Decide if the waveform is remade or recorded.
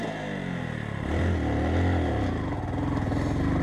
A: recorded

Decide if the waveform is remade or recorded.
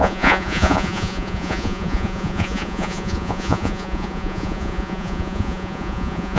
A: remade